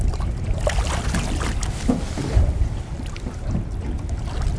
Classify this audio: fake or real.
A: real